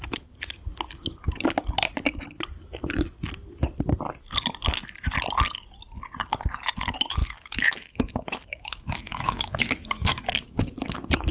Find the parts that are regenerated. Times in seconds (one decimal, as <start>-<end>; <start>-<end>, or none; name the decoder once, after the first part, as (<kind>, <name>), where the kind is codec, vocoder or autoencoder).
7.2-11.3 (autoencoder, DAC-VAE)